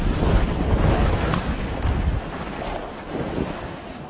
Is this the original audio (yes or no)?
yes